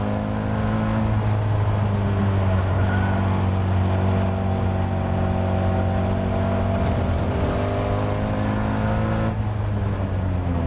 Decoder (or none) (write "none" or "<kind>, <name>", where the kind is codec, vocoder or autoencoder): none